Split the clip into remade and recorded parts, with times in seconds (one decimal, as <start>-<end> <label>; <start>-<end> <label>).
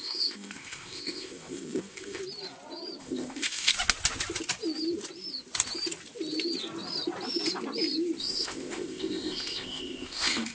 0.0-2.2 remade; 2.2-3.0 recorded; 3.0-3.7 remade; 3.7-8.2 recorded; 8.2-10.5 remade